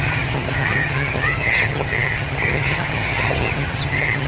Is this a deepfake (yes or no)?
yes